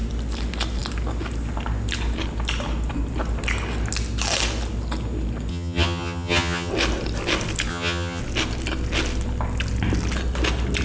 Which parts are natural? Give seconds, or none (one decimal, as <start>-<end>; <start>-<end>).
0.0-5.5; 6.7-7.7; 8.2-10.8